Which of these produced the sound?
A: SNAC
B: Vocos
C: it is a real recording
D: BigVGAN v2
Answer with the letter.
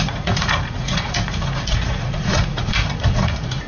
B